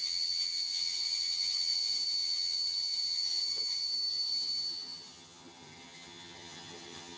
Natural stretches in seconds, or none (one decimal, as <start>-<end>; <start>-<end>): none